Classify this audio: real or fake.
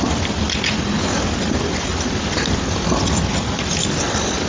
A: real